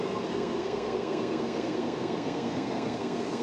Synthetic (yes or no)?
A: yes